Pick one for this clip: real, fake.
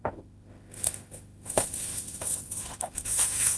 fake